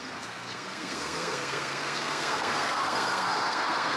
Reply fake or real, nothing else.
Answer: fake